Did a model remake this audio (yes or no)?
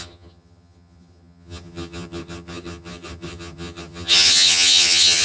yes